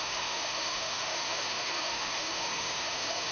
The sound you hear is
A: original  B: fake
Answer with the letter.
B